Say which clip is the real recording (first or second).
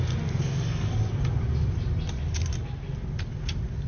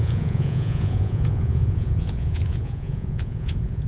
first